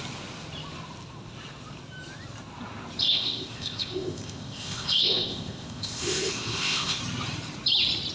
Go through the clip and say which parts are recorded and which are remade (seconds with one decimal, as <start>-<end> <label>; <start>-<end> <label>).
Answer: 0.0-3.0 recorded; 3.0-7.0 remade; 7.0-8.1 recorded